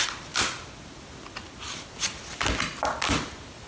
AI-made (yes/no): no